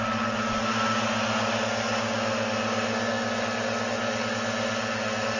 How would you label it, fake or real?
real